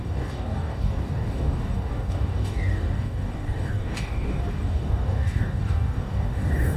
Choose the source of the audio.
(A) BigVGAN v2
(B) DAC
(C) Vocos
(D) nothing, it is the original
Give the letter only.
B